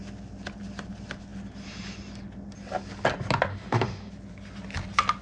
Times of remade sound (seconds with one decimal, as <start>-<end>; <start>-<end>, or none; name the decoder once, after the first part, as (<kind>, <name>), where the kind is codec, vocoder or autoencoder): 3.5-4.1 (autoencoder, DAC-VAE)